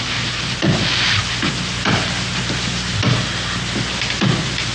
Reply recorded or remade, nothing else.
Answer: recorded